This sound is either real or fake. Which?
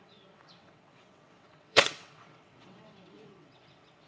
fake